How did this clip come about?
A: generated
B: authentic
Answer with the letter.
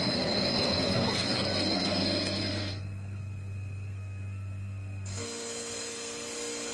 A